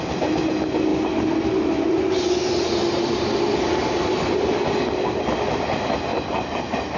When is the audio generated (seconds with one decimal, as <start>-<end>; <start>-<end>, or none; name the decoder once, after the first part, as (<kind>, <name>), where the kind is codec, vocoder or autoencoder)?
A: none